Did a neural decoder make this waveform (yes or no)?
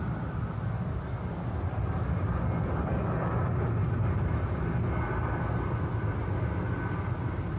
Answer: no